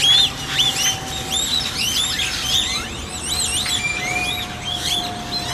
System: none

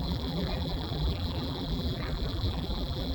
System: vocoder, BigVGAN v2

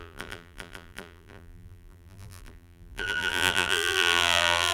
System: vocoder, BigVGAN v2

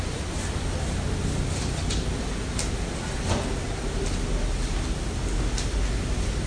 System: none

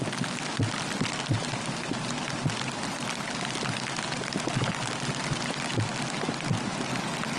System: none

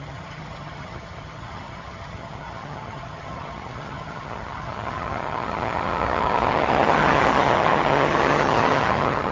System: vocoder, HiFi-GAN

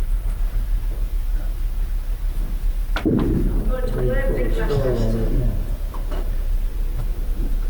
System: none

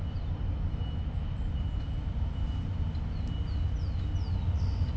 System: none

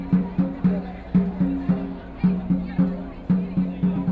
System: none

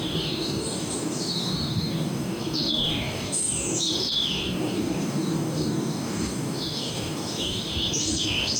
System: codec, DAC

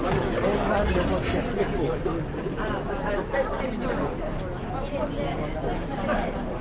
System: none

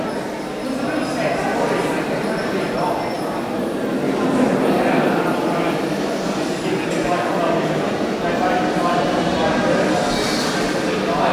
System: none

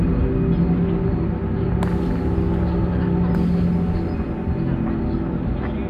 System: none